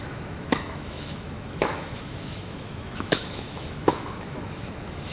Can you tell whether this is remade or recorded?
remade